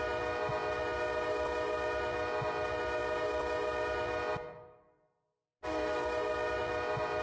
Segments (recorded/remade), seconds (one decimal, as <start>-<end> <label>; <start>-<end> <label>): 0.0-7.2 recorded

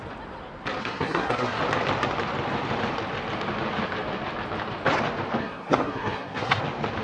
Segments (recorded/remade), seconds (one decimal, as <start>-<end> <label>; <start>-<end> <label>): 0.0-0.8 recorded; 0.8-1.6 remade; 1.6-5.4 recorded; 5.4-6.6 remade; 6.6-7.0 recorded